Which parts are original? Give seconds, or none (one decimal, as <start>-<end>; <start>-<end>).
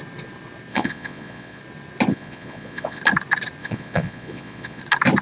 0.0-0.7; 1.6-2.1; 3.0-3.6; 4.8-5.2